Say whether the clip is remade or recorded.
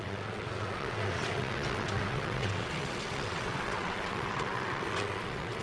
remade